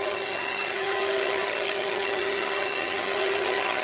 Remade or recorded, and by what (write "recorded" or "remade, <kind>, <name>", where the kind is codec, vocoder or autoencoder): remade, vocoder, HiFi-GAN